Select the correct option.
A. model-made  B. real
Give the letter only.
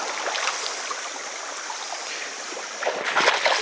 B